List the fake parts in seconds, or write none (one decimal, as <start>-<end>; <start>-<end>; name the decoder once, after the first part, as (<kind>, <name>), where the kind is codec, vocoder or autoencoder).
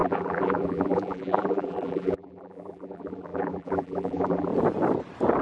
0.0-4.5 (vocoder, BigVGAN v2)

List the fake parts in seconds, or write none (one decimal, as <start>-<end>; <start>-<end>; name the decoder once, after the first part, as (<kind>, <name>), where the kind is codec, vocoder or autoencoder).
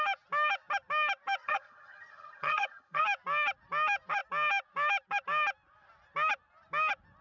1.4-3.0 (vocoder, HiFi-GAN)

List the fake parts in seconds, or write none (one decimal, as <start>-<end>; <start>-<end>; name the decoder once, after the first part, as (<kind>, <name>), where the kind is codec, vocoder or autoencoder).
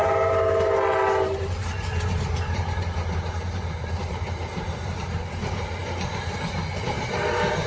0.0-5.8 (vocoder, BigVGAN v2); 6.8-7.7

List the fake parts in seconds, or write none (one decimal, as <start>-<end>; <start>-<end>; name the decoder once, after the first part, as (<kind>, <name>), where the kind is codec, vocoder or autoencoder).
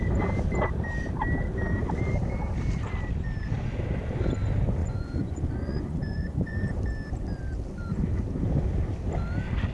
4.8-6.8 (vocoder, Vocos)